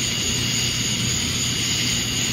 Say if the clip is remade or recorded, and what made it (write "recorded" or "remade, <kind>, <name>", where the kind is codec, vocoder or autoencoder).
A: recorded